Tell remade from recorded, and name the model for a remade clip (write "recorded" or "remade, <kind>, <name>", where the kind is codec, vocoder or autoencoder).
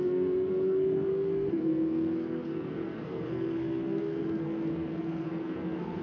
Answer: remade, codec, SNAC